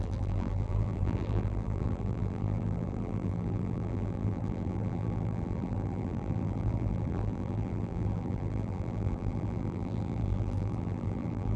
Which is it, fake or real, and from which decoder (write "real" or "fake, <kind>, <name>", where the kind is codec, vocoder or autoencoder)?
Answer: fake, vocoder, BigVGAN v2